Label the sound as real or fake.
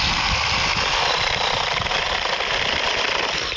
real